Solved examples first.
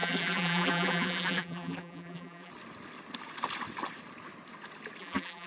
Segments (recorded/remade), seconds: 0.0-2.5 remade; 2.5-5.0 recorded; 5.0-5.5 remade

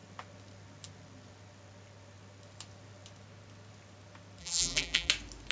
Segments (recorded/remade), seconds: 0.0-4.4 recorded; 4.4-5.1 remade; 5.1-5.5 recorded

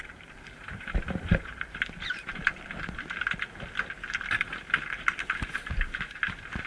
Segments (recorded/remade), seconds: 0.0-2.3 remade; 2.3-5.1 recorded; 5.1-6.7 remade

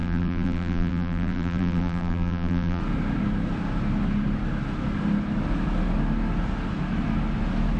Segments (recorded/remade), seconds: 0.0-2.8 remade; 2.8-7.8 recorded

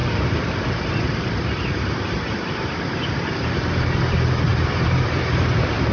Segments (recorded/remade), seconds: 0.0-3.5 remade; 3.5-4.5 recorded; 4.5-5.2 remade; 5.2-5.9 recorded